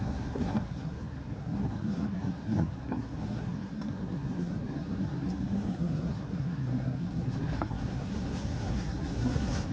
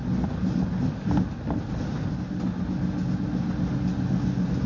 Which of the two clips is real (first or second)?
second